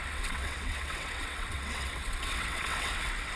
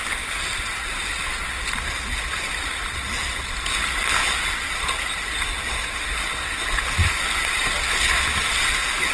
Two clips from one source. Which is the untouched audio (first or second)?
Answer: second